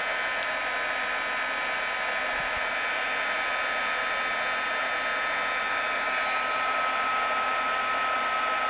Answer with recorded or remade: recorded